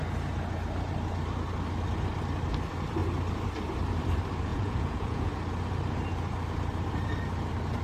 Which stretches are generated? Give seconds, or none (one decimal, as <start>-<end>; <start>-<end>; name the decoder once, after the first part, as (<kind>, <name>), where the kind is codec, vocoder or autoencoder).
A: 4.5-5.3 (vocoder, Vocos)